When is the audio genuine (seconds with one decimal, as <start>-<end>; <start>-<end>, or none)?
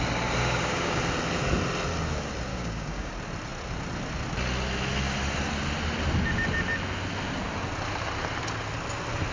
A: 0.0-0.4; 1.0-2.5; 3.1-9.3